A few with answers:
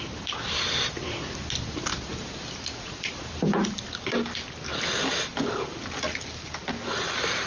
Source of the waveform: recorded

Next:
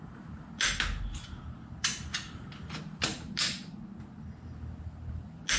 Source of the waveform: recorded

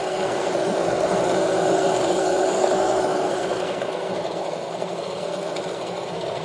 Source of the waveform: remade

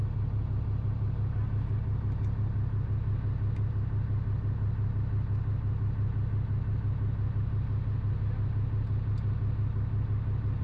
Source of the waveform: recorded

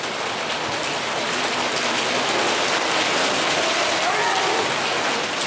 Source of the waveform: recorded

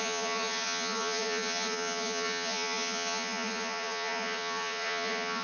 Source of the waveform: remade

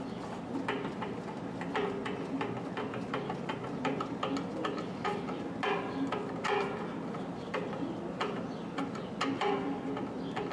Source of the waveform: recorded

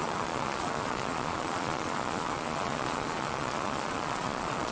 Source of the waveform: remade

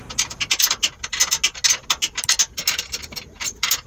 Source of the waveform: recorded